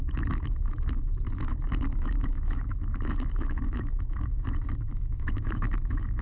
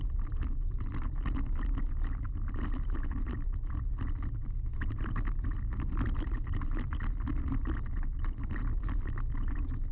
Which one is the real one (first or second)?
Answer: second